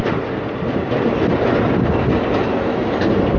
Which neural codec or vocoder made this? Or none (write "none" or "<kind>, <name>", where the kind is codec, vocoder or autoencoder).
none